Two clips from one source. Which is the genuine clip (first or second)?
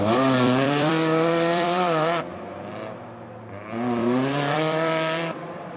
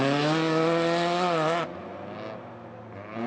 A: second